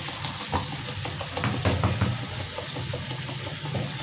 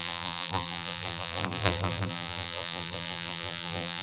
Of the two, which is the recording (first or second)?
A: first